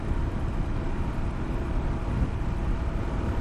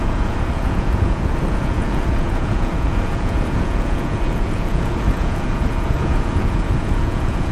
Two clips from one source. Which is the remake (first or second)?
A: second